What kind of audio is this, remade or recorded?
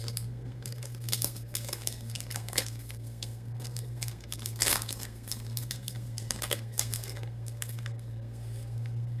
remade